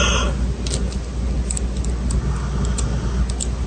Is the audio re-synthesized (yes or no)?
no